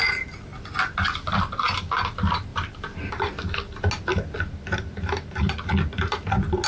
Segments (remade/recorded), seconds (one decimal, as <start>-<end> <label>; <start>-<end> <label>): 0.0-6.7 recorded